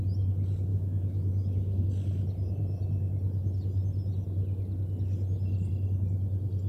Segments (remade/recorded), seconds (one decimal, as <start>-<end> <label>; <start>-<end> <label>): 0.0-0.7 recorded; 0.7-1.8 remade; 1.8-6.7 recorded